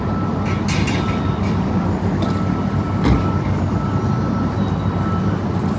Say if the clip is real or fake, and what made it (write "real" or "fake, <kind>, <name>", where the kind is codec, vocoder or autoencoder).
real